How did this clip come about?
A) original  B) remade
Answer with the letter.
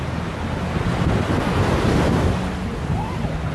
A